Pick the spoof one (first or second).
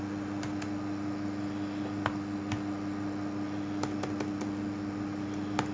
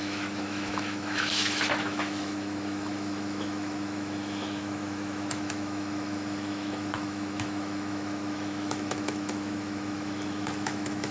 second